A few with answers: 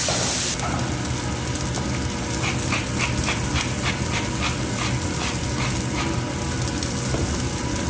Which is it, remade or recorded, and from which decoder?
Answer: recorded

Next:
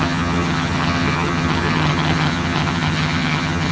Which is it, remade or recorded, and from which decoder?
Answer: remade, vocoder, HiFi-GAN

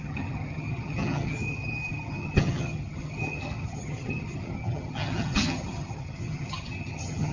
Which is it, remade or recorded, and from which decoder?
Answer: remade, vocoder, HiFi-GAN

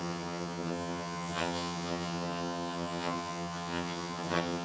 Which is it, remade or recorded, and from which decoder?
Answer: remade, vocoder, HiFi-GAN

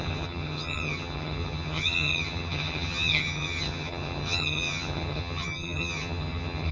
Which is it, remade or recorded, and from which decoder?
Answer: remade, vocoder, HiFi-GAN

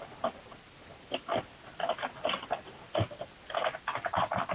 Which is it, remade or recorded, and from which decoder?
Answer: recorded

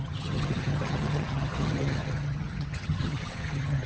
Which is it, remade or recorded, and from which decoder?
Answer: remade, vocoder, HiFi-GAN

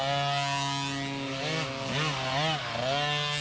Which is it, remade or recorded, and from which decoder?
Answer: recorded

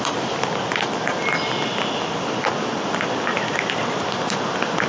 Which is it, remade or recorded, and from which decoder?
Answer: recorded